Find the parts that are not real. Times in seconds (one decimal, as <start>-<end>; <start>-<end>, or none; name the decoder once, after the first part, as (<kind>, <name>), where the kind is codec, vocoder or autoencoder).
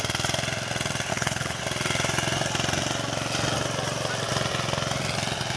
1.1-1.6 (codec, HILCodec)